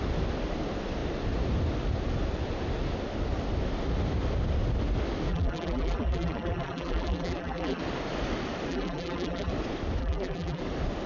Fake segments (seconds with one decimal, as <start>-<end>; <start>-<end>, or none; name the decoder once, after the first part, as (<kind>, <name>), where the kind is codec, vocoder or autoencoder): 5.3-7.8 (vocoder, BigVGAN v2); 8.7-9.5; 10.0-10.6